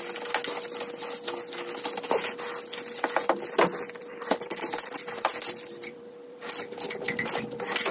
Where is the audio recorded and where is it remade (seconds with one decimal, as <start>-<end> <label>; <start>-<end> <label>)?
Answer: 0.0-4.0 recorded; 4.0-6.4 remade; 6.4-7.9 recorded